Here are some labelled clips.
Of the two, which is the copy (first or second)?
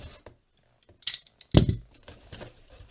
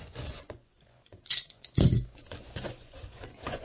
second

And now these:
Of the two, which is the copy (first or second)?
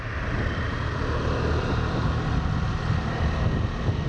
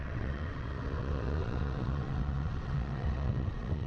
second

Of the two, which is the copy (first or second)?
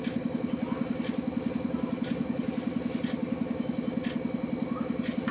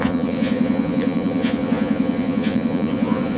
second